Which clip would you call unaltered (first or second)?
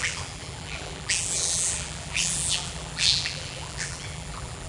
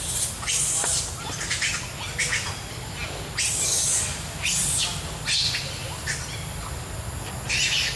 second